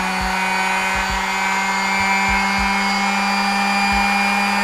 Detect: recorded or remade recorded